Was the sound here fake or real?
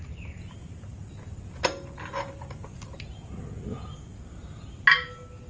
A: real